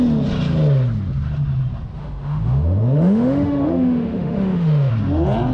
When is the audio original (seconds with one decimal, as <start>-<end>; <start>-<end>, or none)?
0.0-2.0; 4.9-5.5